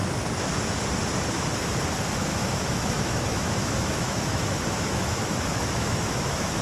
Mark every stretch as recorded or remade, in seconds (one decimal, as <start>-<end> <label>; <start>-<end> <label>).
0.0-2.3 recorded; 2.3-6.6 remade